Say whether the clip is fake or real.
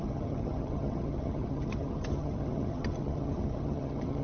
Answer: fake